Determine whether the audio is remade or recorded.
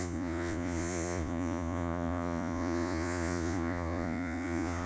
remade